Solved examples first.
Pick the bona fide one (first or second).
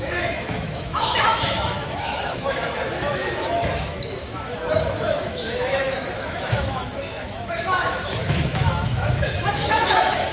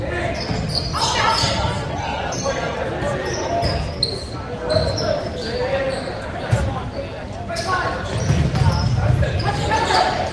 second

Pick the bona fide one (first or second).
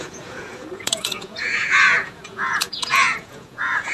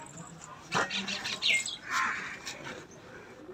second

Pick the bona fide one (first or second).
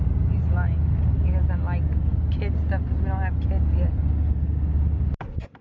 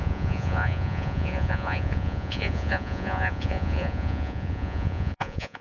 first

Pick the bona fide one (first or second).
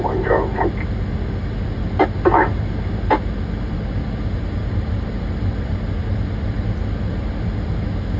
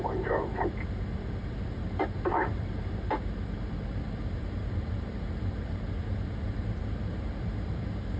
first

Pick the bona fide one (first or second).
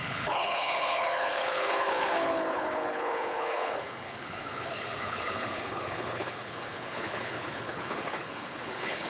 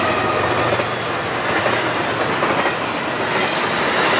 second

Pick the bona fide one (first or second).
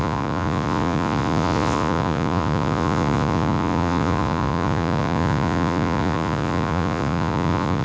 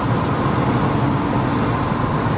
second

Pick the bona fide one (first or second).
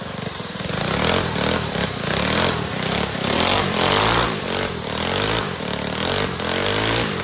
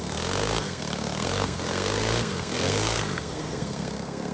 first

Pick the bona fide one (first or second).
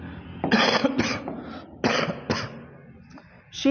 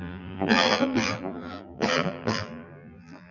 first